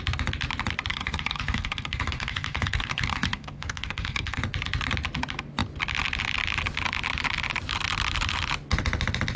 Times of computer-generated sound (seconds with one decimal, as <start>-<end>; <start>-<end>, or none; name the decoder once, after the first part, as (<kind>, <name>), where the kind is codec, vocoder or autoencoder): 0.9-4.4 (codec, SNAC)